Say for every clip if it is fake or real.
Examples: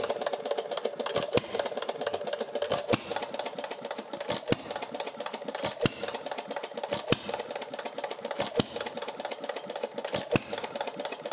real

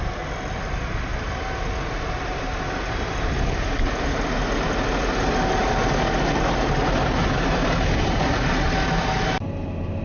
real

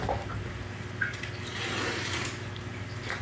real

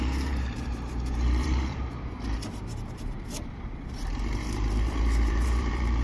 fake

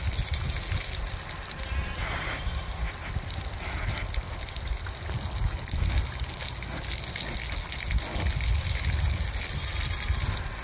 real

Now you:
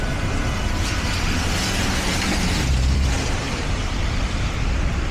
fake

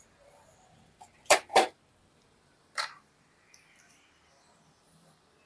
fake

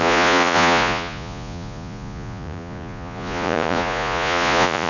fake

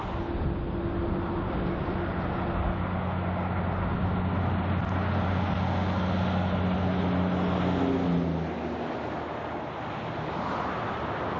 real